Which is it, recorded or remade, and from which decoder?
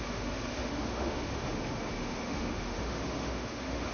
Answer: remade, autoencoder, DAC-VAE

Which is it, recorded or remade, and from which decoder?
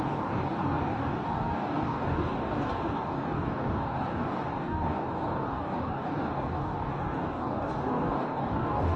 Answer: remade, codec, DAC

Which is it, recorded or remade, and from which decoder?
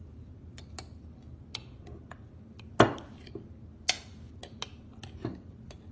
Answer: recorded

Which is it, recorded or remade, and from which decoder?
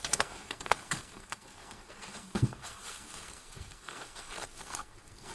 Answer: remade, codec, SNAC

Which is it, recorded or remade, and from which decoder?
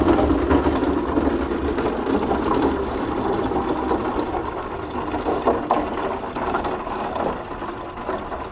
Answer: recorded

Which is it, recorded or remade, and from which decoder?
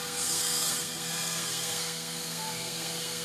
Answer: remade, codec, SNAC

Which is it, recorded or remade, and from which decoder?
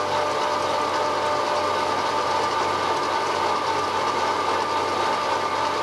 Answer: recorded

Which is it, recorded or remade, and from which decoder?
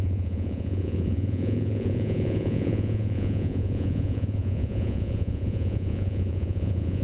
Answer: remade, vocoder, Vocos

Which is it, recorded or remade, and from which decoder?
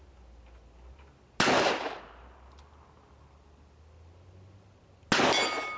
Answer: recorded